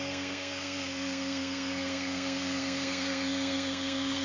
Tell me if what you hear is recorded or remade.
remade